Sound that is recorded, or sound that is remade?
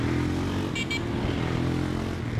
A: recorded